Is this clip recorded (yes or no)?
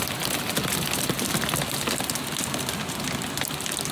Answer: yes